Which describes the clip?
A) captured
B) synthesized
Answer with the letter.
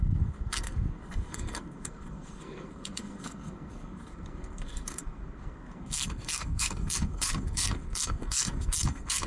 B